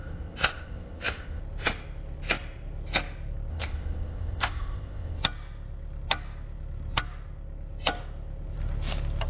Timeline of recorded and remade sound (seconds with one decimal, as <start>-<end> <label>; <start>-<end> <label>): 0.0-1.4 remade; 1.4-3.5 recorded; 3.5-5.2 remade; 5.2-9.3 recorded